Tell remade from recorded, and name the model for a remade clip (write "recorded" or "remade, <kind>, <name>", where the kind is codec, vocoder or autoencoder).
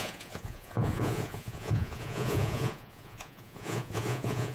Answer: remade, vocoder, Vocos